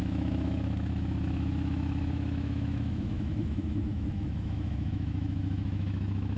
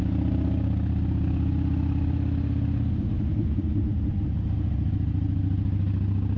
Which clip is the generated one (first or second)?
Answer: first